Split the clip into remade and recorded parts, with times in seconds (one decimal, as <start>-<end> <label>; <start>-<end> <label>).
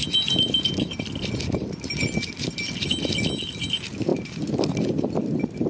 0.0-5.7 recorded